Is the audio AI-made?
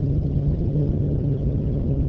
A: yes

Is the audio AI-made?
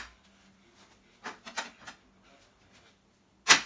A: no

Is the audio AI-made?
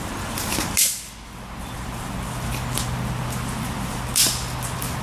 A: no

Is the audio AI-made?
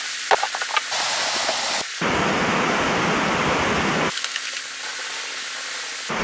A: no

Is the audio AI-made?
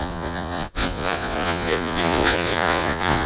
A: yes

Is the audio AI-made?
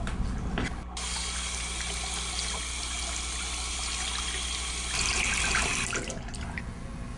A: no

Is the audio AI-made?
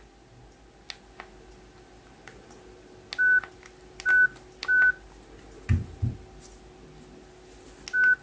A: no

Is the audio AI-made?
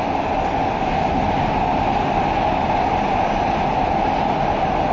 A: no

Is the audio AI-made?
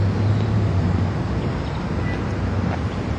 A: no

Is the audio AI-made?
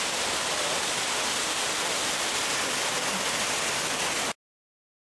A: no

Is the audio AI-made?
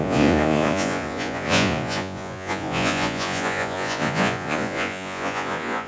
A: yes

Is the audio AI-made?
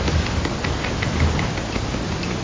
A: no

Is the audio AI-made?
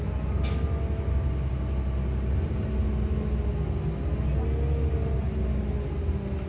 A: no